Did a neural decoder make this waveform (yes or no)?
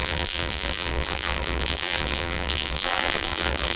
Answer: yes